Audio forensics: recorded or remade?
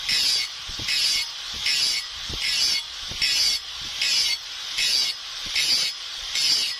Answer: recorded